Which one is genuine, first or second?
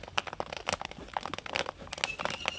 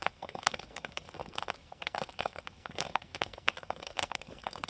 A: first